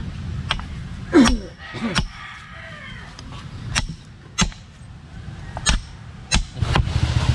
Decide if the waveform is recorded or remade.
recorded